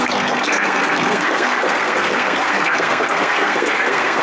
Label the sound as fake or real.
fake